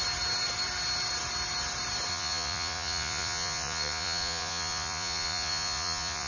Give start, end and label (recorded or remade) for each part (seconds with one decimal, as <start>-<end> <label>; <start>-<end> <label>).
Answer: 0.0-2.1 recorded; 2.1-6.3 remade